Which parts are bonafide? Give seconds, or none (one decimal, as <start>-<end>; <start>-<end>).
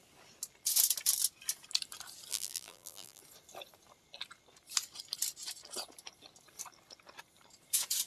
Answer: 0.0-2.3; 3.2-8.1